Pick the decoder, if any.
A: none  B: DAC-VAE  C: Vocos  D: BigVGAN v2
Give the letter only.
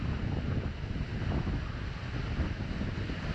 A